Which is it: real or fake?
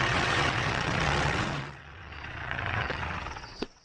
fake